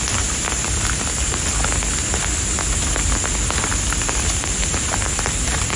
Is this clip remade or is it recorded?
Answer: recorded